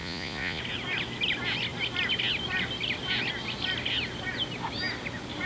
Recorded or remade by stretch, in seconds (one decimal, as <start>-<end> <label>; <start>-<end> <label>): 0.0-0.6 remade; 0.6-5.5 recorded